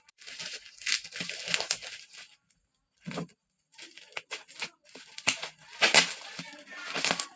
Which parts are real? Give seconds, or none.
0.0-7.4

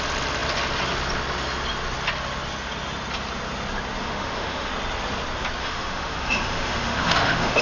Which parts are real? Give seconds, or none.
0.0-4.0; 4.7-5.6

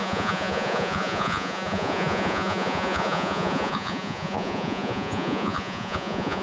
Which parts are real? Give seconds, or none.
none

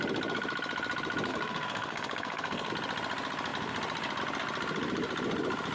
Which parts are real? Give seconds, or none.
0.0-1.3; 2.7-5.7

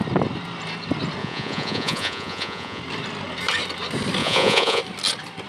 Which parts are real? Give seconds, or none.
0.0-1.2; 2.8-4.2; 4.8-5.5